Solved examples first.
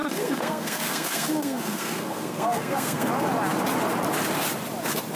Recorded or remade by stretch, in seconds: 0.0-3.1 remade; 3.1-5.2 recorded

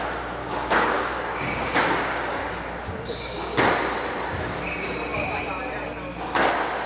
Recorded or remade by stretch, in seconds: 0.0-0.4 recorded; 0.4-2.5 remade; 2.5-6.9 recorded